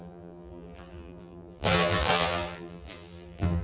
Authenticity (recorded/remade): remade